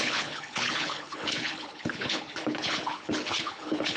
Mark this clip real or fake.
fake